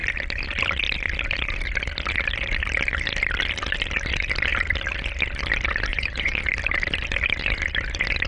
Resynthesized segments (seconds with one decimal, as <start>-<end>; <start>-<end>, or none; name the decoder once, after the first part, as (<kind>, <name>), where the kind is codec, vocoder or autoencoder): 5.9-6.4 (vocoder, Vocos)